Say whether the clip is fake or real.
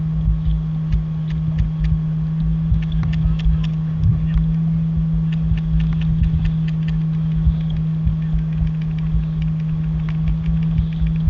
real